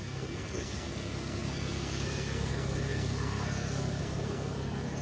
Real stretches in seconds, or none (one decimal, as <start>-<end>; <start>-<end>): none